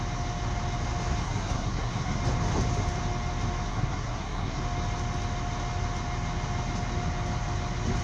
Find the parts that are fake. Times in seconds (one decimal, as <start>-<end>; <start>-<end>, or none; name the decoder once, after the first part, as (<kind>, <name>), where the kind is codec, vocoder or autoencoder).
1.2-2.2 (codec, SNAC); 3.7-4.6